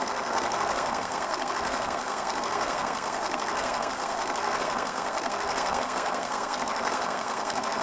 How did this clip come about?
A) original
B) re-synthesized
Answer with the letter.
B